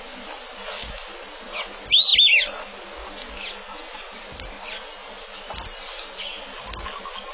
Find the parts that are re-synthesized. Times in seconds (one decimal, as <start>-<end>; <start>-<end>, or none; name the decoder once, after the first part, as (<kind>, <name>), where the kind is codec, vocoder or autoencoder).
none